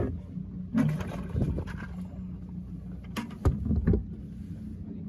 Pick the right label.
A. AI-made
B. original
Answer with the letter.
B